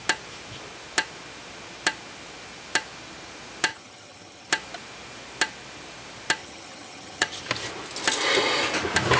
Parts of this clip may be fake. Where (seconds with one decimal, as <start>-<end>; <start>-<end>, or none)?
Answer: 3.7-4.5; 6.4-7.4